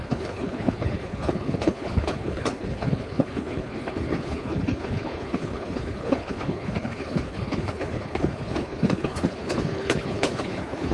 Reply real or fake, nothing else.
fake